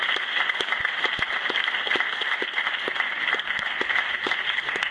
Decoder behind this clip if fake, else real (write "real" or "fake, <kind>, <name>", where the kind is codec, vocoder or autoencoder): real